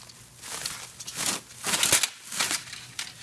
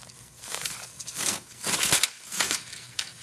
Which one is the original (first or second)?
first